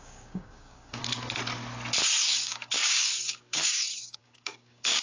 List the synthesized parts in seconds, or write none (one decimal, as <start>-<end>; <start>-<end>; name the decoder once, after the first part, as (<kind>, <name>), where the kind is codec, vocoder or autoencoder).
0.0-1.0 (codec, DAC); 2.2-5.0